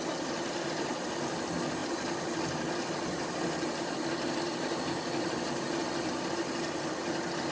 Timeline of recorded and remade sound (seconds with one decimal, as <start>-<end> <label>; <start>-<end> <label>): 0.0-7.5 recorded